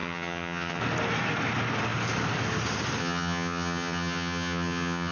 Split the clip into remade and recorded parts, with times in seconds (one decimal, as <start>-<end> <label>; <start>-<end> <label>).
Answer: 0.0-0.8 remade; 0.8-3.0 recorded; 3.0-5.1 remade